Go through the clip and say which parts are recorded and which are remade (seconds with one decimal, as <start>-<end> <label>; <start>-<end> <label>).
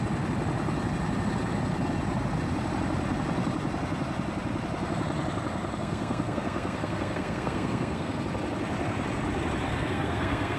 0.0-5.8 recorded; 5.8-8.2 remade; 8.2-9.7 recorded; 9.7-10.6 remade